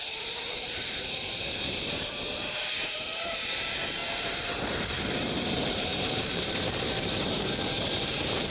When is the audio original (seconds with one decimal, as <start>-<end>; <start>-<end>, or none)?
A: none